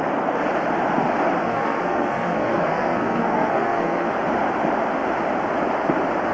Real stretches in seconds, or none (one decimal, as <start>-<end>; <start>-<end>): 0.0-1.4; 4.1-6.3